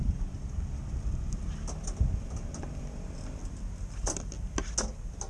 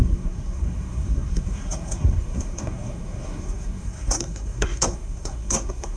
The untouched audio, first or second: first